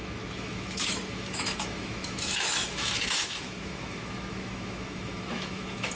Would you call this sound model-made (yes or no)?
yes